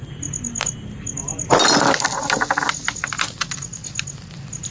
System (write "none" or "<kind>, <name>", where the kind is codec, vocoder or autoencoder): none